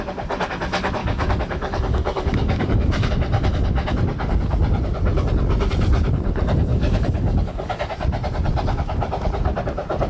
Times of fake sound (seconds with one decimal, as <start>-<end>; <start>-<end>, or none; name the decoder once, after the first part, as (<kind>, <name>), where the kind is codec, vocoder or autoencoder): 1.0-3.1 (codec, DAC); 6.7-7.7